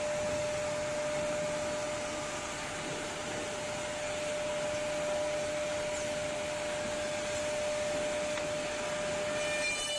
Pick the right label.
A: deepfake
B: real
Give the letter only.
B